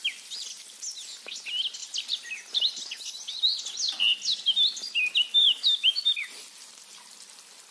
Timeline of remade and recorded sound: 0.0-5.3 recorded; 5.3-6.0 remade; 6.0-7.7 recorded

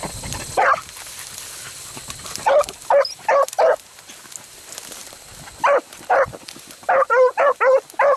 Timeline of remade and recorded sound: 0.0-8.2 recorded

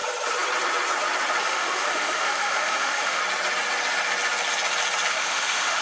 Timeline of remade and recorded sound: 0.0-1.4 recorded; 1.4-3.2 remade; 3.2-5.1 recorded; 5.1-5.8 remade

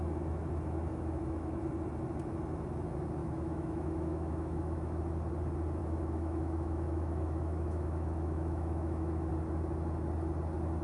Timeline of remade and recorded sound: 0.0-0.9 recorded; 0.9-1.6 remade; 1.6-3.2 recorded; 3.2-5.0 remade; 5.0-5.8 recorded; 5.8-9.3 remade; 9.3-10.8 recorded

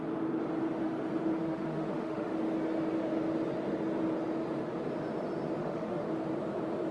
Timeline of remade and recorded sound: 0.0-1.4 recorded; 1.4-2.3 remade; 2.3-5.6 recorded; 5.6-6.1 remade; 6.1-6.9 recorded

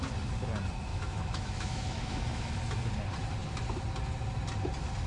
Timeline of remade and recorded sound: 0.0-0.9 recorded; 0.9-2.5 remade; 2.5-5.1 recorded

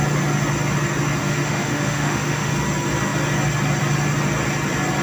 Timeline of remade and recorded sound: 0.0-1.2 recorded; 1.2-2.5 remade; 2.5-5.0 recorded